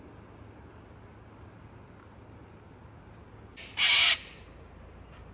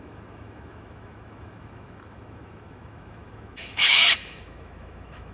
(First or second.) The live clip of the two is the first